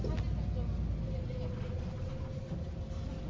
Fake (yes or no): no